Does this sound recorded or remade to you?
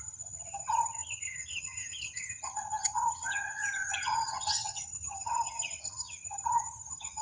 remade